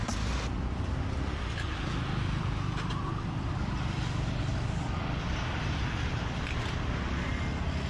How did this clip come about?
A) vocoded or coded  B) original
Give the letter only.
B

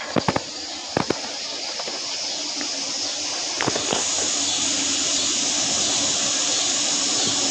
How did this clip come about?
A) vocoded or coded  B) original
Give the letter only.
B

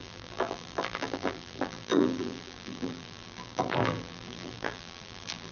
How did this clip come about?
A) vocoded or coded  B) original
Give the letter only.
A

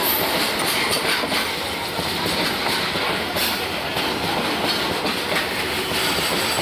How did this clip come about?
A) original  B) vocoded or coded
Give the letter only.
A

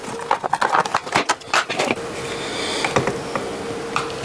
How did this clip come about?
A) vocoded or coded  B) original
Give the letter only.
B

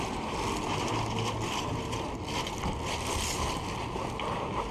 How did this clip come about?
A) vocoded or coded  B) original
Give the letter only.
B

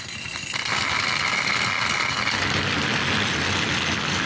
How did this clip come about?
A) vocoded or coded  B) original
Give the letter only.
B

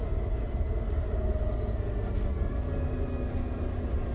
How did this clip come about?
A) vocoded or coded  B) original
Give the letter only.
B